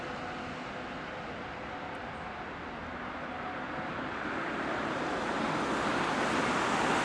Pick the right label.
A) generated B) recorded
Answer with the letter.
B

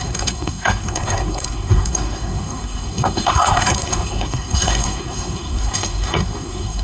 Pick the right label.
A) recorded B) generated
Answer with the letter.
B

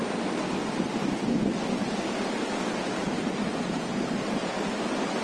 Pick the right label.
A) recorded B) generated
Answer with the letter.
A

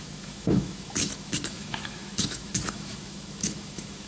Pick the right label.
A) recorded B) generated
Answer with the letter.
B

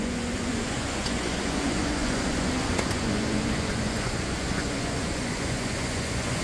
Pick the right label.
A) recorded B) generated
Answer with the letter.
B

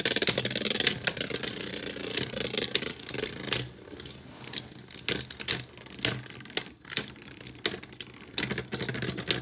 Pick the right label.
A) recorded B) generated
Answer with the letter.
A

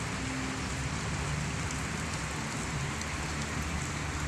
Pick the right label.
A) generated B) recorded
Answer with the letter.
B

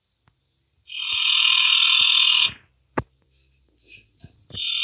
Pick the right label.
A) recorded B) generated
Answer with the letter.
A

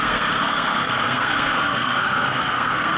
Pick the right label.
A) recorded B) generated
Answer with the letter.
B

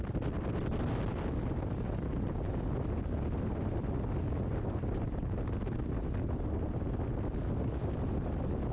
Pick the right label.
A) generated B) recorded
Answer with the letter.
B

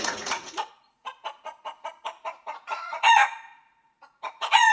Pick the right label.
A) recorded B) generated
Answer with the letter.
B